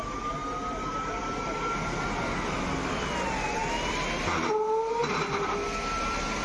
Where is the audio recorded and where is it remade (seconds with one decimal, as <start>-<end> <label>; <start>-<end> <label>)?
0.0-6.4 recorded